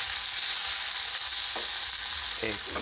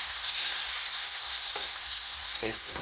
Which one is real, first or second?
first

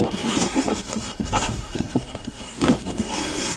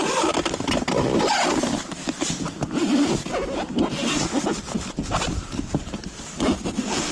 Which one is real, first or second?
second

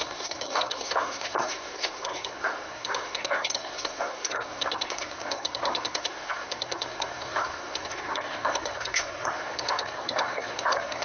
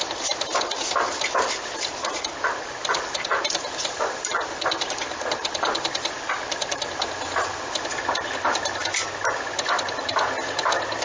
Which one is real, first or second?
second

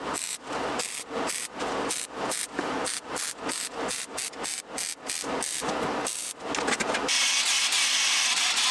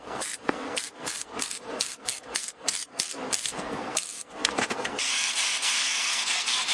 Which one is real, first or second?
first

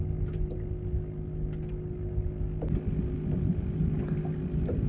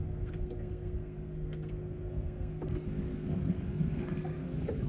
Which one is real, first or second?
first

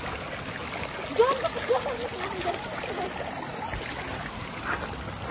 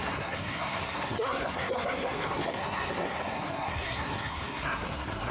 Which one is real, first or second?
first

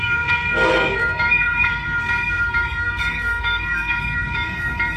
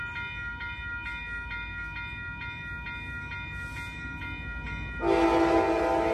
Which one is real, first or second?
second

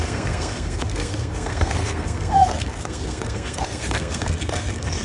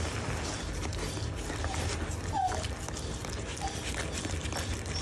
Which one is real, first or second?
second